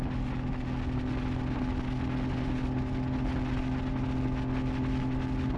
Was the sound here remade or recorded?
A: recorded